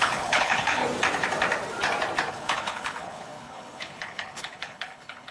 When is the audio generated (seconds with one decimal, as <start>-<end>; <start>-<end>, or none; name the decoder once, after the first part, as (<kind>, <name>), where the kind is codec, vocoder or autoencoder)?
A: 0.0-0.8 (codec, HILCodec); 2.3-5.3